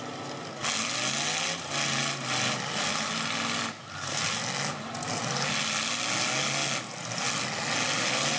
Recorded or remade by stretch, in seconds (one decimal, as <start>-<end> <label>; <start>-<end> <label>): 0.0-8.4 recorded